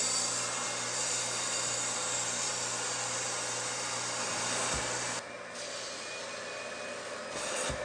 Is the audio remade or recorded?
recorded